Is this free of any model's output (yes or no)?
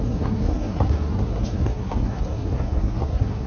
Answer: no